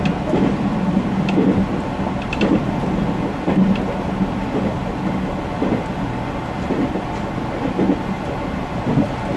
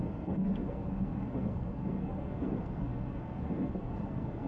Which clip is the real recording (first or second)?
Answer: first